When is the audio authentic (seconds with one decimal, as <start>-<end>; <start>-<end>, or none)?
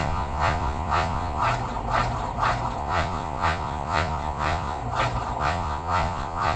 1.4-2.8; 4.8-5.4